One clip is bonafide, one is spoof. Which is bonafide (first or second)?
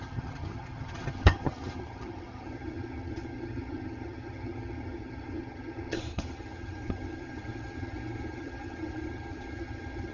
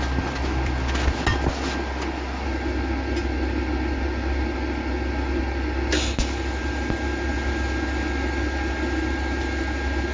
second